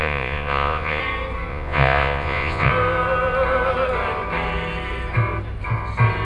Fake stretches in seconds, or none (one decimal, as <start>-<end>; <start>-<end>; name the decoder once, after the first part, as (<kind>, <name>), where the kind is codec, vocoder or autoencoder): 0.0-1.0 (vocoder, Vocos); 1.5-2.7